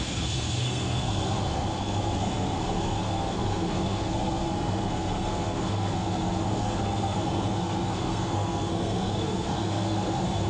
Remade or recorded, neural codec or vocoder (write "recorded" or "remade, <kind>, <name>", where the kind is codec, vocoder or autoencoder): remade, codec, SNAC